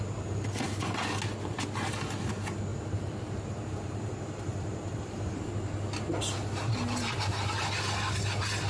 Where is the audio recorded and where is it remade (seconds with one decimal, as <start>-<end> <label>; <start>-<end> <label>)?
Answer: 0.0-2.7 recorded; 2.7-5.5 remade; 5.5-8.7 recorded